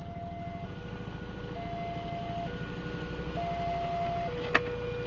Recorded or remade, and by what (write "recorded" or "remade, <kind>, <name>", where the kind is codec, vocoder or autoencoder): recorded